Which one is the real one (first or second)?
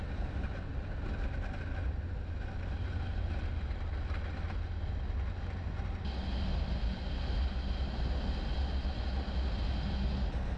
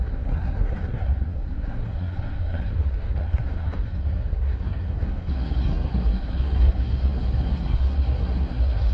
first